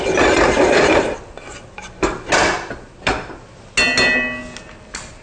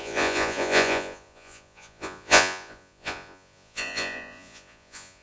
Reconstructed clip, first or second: second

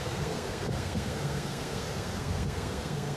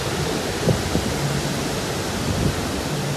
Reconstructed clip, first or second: first